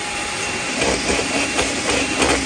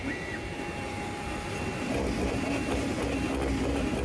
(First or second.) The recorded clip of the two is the second